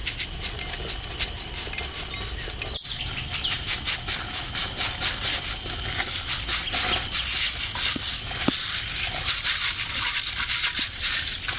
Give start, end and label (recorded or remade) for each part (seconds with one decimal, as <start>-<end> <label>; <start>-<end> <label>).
0.0-11.6 recorded